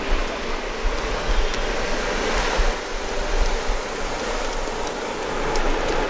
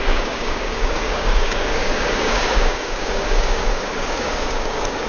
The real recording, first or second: first